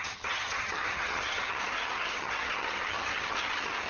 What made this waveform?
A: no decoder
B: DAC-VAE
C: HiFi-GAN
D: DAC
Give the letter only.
C